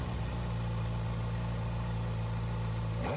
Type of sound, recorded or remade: recorded